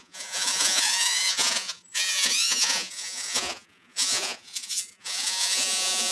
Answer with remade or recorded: remade